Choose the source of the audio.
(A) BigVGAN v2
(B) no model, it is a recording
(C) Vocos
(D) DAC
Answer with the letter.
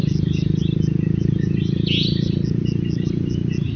B